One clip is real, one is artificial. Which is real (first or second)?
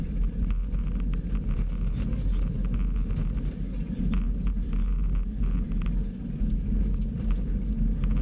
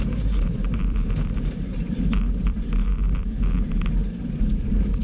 first